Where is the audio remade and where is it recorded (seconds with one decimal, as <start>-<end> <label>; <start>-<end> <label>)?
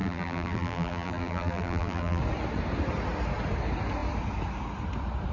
0.0-2.2 remade; 2.2-5.3 recorded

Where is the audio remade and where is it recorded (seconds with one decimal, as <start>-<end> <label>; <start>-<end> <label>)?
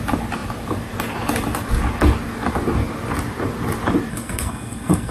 0.0-4.1 recorded; 4.1-5.1 remade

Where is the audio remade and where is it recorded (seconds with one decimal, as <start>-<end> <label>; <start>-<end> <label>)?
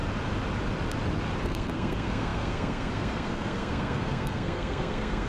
0.0-1.4 recorded; 1.4-5.3 remade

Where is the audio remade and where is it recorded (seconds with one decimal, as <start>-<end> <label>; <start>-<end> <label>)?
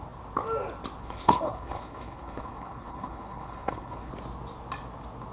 0.0-1.0 recorded; 1.0-4.1 remade; 4.1-5.3 recorded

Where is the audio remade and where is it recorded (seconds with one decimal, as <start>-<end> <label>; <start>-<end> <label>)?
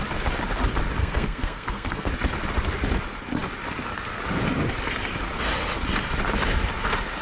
0.0-1.0 recorded; 1.0-2.1 remade; 2.1-7.2 recorded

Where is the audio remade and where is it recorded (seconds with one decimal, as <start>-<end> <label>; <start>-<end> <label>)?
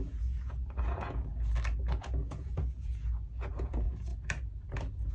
0.0-1.3 remade; 1.3-1.8 recorded; 1.8-4.1 remade; 4.1-5.1 recorded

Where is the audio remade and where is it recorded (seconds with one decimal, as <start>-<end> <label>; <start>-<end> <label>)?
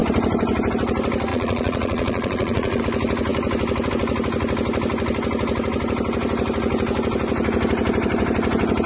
0.0-1.3 recorded; 1.3-2.8 remade; 2.8-8.9 recorded